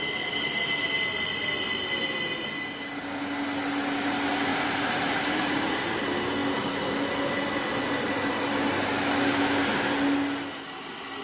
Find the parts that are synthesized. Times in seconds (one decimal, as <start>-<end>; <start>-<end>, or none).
4.5-6.0